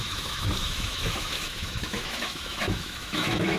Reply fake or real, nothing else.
fake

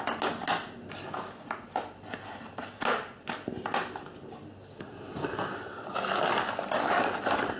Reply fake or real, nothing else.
real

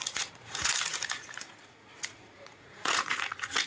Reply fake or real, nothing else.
fake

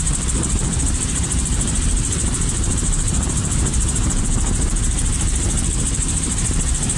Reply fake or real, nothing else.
fake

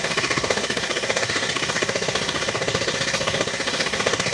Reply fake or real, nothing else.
fake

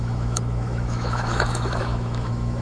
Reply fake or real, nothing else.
fake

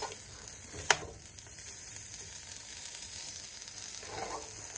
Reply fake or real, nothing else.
real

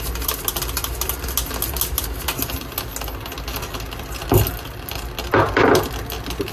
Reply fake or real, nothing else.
real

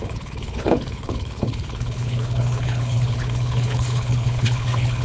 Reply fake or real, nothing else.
fake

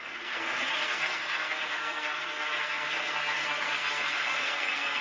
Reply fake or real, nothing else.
fake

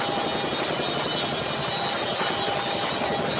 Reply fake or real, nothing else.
real